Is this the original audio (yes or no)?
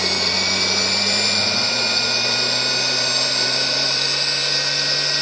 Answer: yes